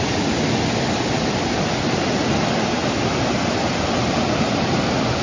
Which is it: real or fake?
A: real